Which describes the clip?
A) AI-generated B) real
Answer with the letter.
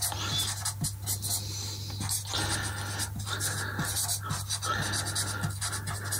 B